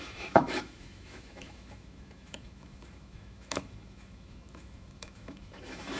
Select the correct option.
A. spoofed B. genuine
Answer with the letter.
A